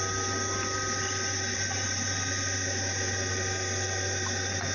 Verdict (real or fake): real